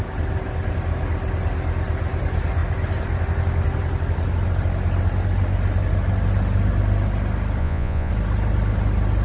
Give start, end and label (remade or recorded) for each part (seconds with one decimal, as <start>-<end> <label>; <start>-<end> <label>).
0.0-7.6 recorded; 7.6-8.1 remade; 8.1-9.2 recorded

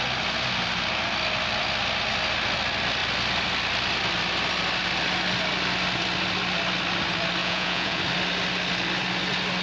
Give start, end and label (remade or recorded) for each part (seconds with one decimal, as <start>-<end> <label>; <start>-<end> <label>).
0.0-7.4 recorded; 7.4-8.0 remade; 8.0-9.6 recorded

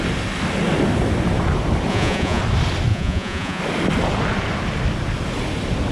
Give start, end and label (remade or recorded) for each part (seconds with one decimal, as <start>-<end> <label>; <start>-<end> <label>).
0.0-1.9 recorded; 1.9-2.4 remade; 2.4-2.9 recorded; 2.9-3.6 remade; 3.6-5.9 recorded

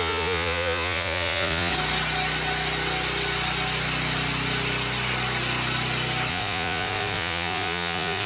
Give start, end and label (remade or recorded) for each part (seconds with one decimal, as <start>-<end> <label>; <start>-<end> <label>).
0.0-1.7 remade; 1.7-6.3 recorded; 6.3-8.3 remade

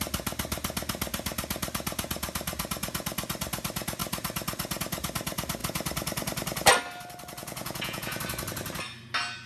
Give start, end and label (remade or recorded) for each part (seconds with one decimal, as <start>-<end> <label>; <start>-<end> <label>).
0.0-7.4 recorded; 7.4-8.2 remade; 8.2-9.5 recorded

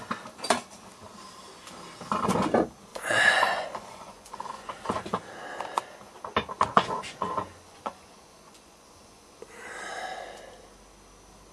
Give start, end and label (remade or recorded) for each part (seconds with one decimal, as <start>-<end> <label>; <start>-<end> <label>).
0.0-2.9 recorded; 2.9-4.7 remade; 4.7-6.7 recorded; 6.7-9.4 remade; 9.4-11.5 recorded

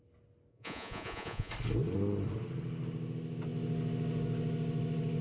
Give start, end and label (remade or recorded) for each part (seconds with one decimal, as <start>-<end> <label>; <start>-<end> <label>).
0.0-0.5 recorded; 0.5-1.5 remade; 1.5-5.2 recorded